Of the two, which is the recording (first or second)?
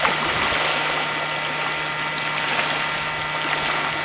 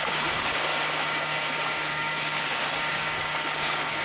first